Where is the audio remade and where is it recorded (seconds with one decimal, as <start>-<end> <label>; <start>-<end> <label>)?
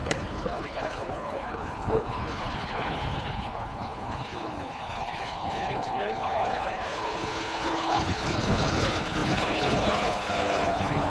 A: 0.0-11.1 remade